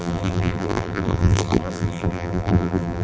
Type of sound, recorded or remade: remade